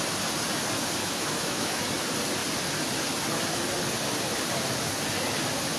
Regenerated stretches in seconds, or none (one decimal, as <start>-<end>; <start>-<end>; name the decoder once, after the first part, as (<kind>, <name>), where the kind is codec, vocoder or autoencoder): 1.0-1.8 (autoencoder, DAC-VAE)